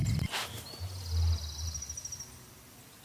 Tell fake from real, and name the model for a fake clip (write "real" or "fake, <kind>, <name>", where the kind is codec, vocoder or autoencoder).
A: real